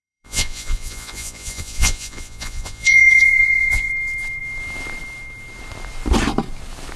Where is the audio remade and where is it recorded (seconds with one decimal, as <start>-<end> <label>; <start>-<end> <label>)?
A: 0.0-3.9 remade; 3.9-7.0 recorded